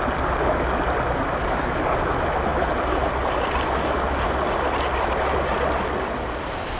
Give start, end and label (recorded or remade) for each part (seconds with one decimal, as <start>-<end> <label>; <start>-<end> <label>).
0.0-1.4 recorded; 1.4-2.1 remade; 2.1-6.8 recorded